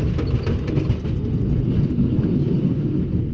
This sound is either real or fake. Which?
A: real